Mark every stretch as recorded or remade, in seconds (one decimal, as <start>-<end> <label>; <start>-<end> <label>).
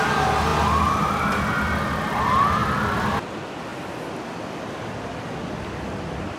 0.0-6.4 recorded